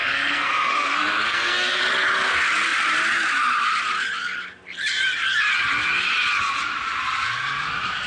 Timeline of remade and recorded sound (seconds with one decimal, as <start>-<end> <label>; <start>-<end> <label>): 0.0-1.8 remade; 1.8-8.1 recorded